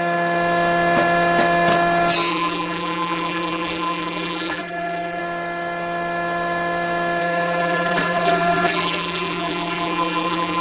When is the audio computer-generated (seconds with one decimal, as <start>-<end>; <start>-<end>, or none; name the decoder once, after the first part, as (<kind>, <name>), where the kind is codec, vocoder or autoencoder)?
2.3-5.2 (vocoder, BigVGAN v2); 7.2-10.6